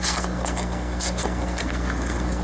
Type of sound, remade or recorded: remade